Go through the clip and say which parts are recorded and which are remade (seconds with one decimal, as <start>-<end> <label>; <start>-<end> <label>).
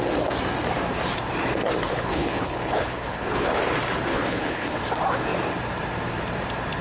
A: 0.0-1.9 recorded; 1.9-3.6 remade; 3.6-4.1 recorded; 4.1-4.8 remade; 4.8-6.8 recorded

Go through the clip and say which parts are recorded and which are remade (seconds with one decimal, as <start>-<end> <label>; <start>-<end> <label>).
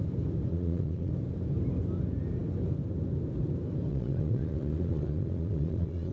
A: 0.0-0.5 recorded; 0.5-1.1 remade; 1.1-3.9 recorded; 3.9-6.1 remade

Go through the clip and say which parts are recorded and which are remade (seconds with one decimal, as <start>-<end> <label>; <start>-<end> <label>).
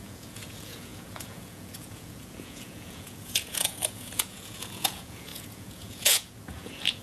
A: 0.0-7.0 remade